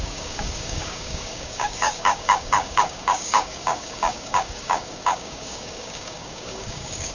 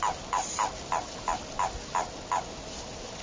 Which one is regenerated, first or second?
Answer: first